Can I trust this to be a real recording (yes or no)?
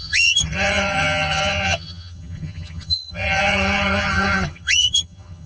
no